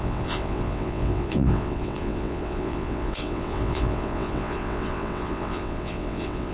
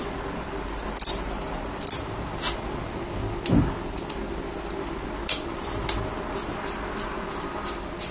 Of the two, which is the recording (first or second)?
second